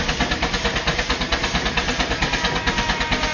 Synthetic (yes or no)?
no